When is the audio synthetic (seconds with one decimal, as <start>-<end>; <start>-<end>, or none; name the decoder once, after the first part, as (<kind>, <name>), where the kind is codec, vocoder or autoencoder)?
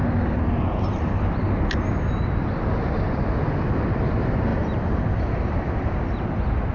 4.5-6.0 (vocoder, BigVGAN v2)